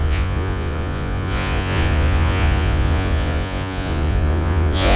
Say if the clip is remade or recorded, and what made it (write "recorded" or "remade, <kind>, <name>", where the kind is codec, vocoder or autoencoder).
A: remade, vocoder, Vocos